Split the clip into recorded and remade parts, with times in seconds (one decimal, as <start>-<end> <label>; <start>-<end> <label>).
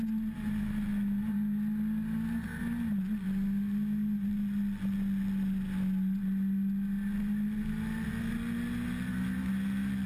0.0-10.1 recorded